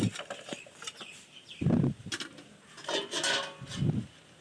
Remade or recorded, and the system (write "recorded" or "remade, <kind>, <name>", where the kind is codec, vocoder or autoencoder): recorded